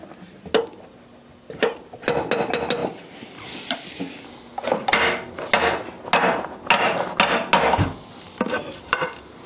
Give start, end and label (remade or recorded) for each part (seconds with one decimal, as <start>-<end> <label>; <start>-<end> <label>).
0.0-2.8 recorded; 2.8-4.7 remade; 4.7-9.5 recorded